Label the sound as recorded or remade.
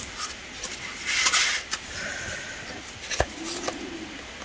recorded